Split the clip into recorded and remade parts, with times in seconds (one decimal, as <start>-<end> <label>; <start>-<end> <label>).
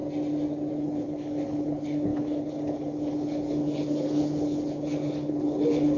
0.0-0.7 recorded; 0.7-6.0 remade